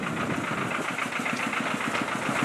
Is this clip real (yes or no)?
yes